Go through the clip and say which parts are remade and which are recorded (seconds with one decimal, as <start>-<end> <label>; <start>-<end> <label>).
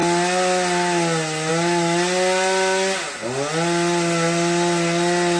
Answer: 0.0-5.4 recorded